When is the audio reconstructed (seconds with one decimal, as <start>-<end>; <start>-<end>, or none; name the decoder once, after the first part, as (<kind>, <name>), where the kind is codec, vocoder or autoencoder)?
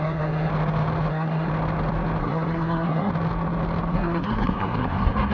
0.0-0.5 (codec, SNAC); 1.1-1.5; 2.2-3.1; 3.9-5.3